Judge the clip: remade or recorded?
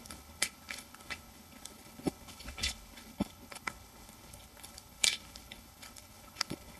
remade